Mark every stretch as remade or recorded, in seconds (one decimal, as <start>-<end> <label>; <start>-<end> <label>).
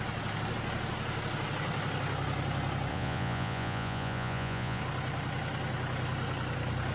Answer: 0.0-2.9 recorded; 2.9-4.8 remade; 4.8-6.9 recorded